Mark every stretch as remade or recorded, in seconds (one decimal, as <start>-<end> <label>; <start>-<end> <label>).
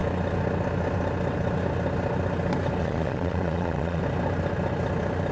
0.0-2.8 recorded; 2.8-4.0 remade; 4.0-5.3 recorded